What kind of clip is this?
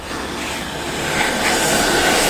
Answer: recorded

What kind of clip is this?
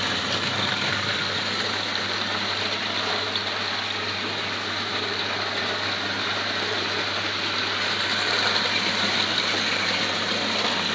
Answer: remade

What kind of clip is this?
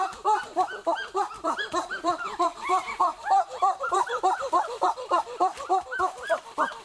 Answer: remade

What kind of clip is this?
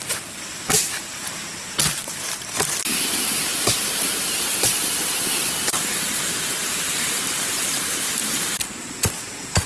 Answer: remade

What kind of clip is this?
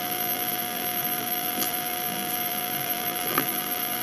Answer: remade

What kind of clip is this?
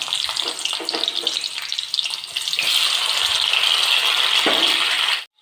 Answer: recorded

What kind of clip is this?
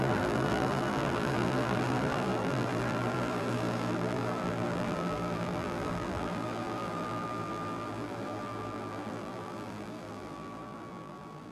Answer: remade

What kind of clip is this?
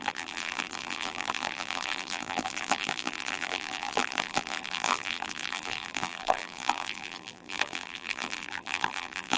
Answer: remade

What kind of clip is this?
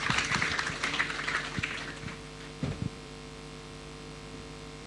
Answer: remade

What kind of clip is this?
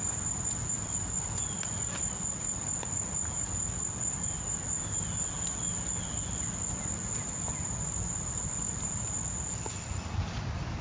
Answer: recorded